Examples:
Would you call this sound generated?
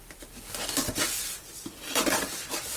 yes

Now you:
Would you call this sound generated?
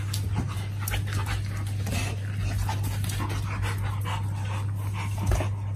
no